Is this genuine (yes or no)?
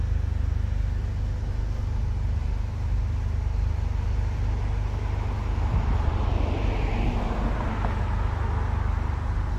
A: yes